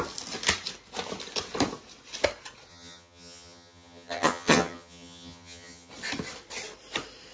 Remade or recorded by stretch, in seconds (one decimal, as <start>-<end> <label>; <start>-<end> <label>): 0.0-2.7 recorded; 2.7-5.9 remade; 5.9-7.3 recorded